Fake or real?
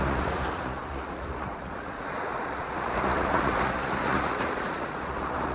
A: fake